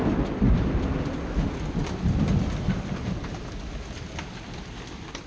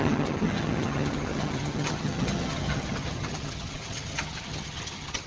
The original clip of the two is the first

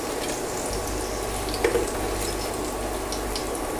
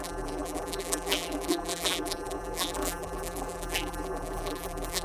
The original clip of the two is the first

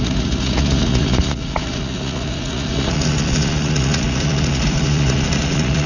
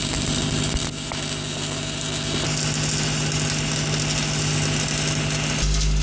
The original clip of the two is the second